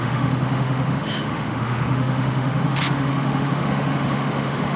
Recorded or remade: remade